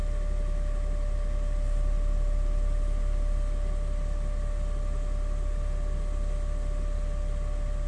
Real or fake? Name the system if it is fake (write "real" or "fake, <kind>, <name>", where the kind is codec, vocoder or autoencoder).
real